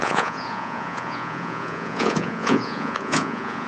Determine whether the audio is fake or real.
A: fake